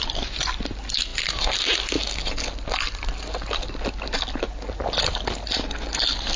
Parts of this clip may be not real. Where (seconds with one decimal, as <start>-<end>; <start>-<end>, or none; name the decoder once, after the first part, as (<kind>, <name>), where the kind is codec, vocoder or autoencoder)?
none